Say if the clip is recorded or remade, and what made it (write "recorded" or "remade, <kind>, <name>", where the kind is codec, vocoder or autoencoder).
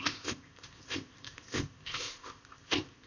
remade, codec, ZipCodec